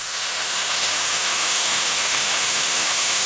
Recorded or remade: remade